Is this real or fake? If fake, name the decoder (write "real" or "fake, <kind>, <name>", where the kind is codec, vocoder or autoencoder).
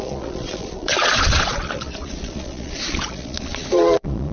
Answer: fake, vocoder, Vocos